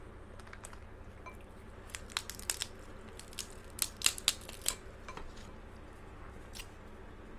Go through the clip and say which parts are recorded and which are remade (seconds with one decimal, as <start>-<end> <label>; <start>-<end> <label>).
0.0-7.4 recorded